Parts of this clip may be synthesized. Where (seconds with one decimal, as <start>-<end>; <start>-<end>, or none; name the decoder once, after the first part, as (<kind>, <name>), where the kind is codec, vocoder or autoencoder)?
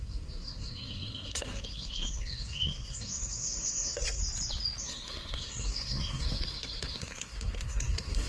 0.0-4.2 (codec, SNAC); 4.8-8.3